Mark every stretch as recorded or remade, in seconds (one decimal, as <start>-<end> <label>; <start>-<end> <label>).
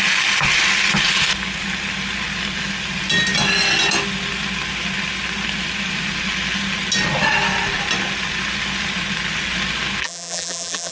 0.0-10.0 recorded; 10.0-10.9 remade